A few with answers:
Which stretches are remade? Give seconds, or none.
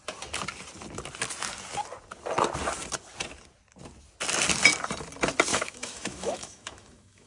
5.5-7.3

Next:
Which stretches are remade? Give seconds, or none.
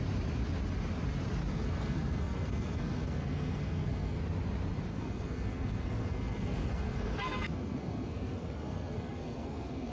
1.5-4.2; 4.9-9.9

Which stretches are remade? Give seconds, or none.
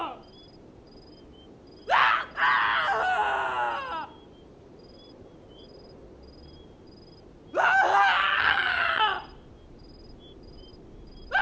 8.2-9.0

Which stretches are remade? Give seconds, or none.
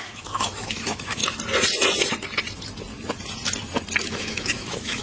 0.0-1.2; 4.0-5.0